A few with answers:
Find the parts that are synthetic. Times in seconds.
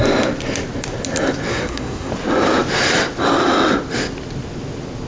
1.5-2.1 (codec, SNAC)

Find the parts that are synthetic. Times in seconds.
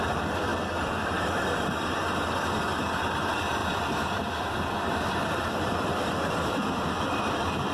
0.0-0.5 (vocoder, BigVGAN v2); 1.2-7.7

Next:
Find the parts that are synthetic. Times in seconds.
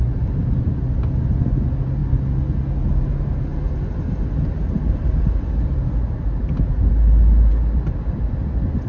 none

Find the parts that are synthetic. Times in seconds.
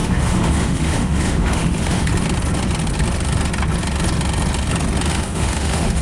0.0-2.1 (autoencoder, DAC-VAE); 5.1-6.0